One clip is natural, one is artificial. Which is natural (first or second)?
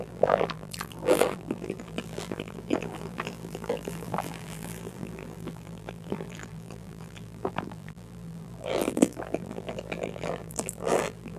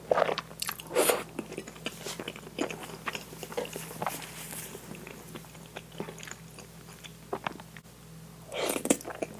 second